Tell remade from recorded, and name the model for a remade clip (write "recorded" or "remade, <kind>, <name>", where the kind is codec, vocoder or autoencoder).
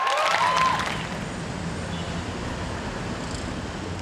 recorded